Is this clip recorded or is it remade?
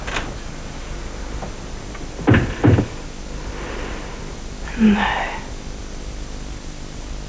recorded